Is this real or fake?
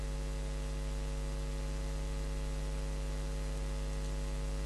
real